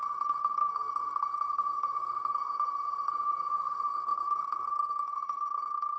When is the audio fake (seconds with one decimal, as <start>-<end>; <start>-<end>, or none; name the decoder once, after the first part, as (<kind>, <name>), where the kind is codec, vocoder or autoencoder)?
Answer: 0.0-6.0 (codec, SNAC)